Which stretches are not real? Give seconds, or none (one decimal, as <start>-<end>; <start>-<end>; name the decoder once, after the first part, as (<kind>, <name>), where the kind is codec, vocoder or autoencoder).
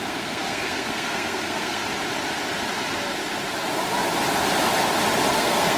0.0-1.8 (codec, SNAC); 5.3-5.8